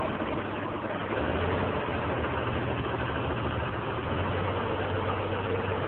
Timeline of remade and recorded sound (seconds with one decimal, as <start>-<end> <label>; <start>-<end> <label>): 0.0-5.9 recorded